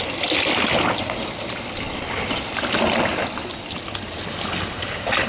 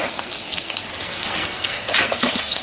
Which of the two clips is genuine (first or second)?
first